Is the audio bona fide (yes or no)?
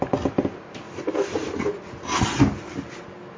yes